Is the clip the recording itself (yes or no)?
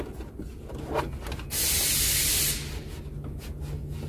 yes